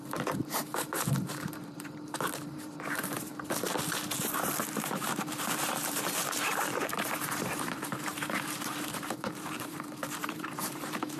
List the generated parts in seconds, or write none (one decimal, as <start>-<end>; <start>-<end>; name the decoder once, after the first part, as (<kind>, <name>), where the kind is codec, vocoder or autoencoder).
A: 0.0-3.3 (vocoder, BigVGAN v2); 4.6-11.2